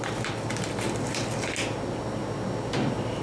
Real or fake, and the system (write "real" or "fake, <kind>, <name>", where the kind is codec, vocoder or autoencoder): real